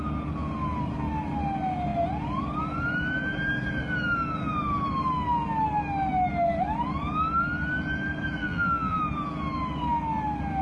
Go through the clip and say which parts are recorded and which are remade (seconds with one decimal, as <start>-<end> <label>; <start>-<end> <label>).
0.0-8.4 recorded; 8.4-9.0 remade; 9.0-10.6 recorded